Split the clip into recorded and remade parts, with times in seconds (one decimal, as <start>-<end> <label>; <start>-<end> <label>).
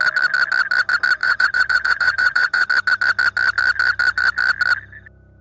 0.0-1.2 recorded; 1.2-2.7 remade; 2.7-5.4 recorded